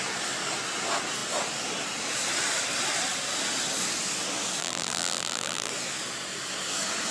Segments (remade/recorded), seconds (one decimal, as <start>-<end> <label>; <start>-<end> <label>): 0.0-4.6 recorded; 4.6-5.7 remade; 5.7-7.1 recorded